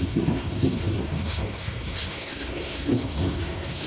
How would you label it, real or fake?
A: fake